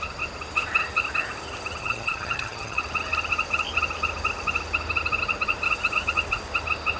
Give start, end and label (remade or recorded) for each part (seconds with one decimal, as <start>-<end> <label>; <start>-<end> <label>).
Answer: 0.0-1.8 recorded; 1.8-2.8 remade; 2.8-7.0 recorded